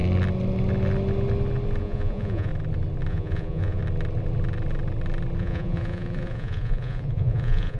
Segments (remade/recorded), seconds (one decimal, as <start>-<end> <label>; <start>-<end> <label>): 0.0-1.8 recorded; 1.8-2.5 remade; 2.5-3.1 recorded; 3.1-3.8 remade; 3.8-5.4 recorded; 5.4-7.8 remade